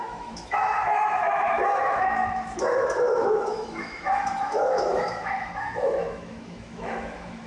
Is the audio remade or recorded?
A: remade